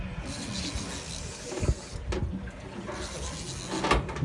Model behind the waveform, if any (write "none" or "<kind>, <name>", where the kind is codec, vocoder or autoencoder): none